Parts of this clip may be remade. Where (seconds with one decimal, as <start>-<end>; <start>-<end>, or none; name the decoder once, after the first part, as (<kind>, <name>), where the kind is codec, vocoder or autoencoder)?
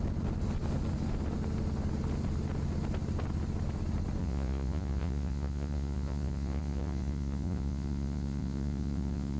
4.2-9.4 (vocoder, Vocos)